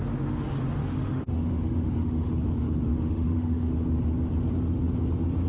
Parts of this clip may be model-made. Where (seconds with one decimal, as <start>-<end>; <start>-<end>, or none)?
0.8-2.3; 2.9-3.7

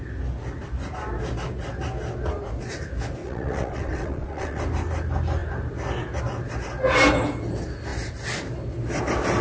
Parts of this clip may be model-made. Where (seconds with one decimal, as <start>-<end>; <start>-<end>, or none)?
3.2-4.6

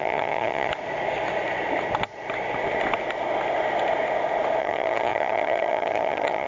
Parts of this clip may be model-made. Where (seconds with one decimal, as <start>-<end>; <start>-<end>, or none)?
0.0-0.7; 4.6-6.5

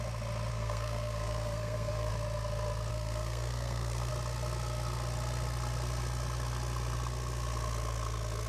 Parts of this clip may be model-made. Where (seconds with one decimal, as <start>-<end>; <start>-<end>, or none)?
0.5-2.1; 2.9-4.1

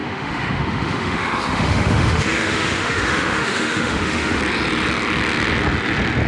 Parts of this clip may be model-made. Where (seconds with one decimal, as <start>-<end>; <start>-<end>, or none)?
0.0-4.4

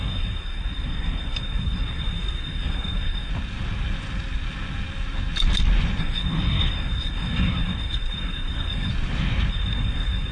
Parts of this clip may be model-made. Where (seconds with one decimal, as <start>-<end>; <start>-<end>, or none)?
0.0-3.3; 6.0-8.9; 9.5-10.3